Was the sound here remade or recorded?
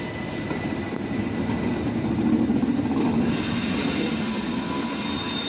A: recorded